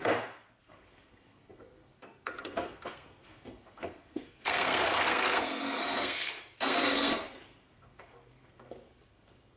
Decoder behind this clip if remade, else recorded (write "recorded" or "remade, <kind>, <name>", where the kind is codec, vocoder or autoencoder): remade, codec, SNAC